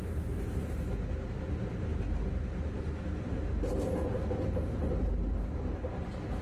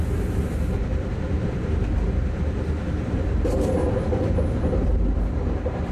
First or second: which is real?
first